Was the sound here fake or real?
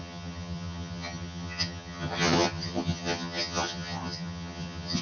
fake